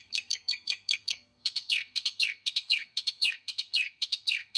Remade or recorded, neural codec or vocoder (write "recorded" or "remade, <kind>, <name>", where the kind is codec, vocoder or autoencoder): remade, codec, SNAC